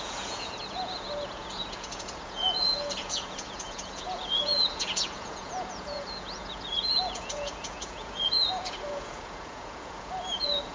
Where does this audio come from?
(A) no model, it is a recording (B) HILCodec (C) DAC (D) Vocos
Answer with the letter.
D